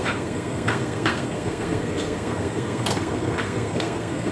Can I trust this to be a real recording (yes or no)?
no